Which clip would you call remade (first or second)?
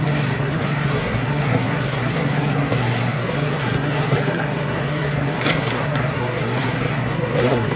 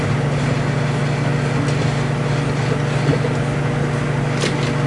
first